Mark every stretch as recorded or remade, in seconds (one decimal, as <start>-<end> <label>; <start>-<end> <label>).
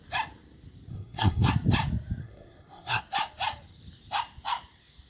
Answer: 0.0-0.9 recorded; 0.9-1.5 remade; 1.5-2.2 recorded; 2.2-3.0 remade; 3.0-5.1 recorded